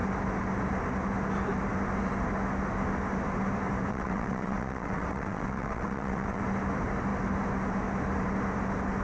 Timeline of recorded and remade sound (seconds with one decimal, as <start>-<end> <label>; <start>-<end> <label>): 0.0-3.9 recorded; 3.9-6.4 remade; 6.4-9.0 recorded